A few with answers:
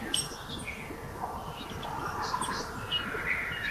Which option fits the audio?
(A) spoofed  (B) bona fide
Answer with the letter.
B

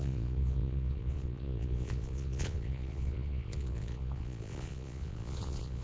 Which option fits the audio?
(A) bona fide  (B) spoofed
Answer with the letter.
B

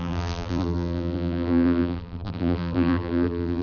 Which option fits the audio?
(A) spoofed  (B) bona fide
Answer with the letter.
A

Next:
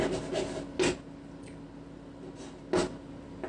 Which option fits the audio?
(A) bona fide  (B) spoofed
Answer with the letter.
A